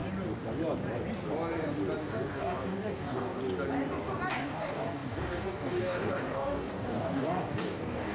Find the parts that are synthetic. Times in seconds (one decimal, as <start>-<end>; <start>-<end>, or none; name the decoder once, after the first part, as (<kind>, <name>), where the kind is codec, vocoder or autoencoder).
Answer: 2.0-3.4 (codec, DAC); 4.3-8.1